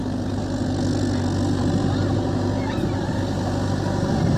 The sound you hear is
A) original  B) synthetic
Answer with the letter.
A